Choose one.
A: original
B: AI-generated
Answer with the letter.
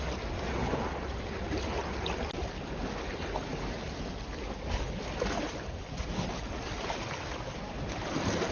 A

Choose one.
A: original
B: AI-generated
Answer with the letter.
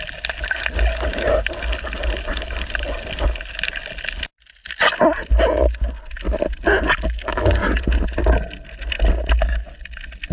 A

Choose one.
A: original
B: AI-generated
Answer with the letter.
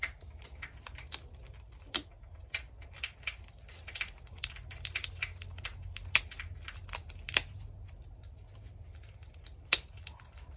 A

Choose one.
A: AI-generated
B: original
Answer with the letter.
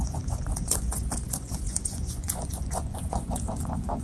A